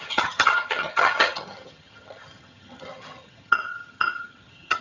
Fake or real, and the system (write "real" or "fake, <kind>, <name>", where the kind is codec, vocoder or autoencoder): fake, vocoder, HiFi-GAN